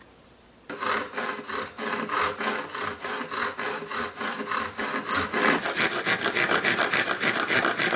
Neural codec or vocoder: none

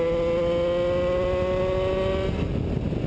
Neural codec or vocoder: none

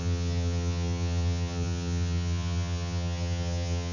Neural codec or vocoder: vocoder, HiFi-GAN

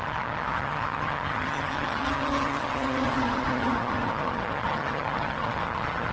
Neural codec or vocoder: vocoder, HiFi-GAN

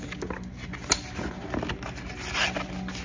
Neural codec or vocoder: none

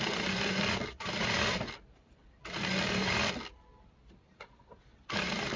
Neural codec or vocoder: none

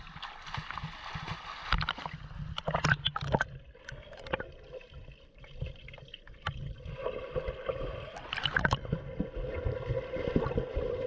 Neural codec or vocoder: none